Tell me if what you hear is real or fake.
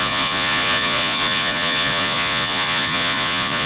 fake